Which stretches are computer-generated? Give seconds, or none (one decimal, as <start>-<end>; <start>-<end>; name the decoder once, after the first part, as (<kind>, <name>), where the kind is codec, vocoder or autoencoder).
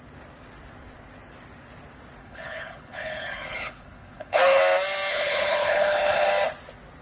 2.2-4.6 (codec, HILCodec); 5.1-6.3